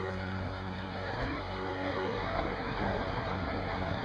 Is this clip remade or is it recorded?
remade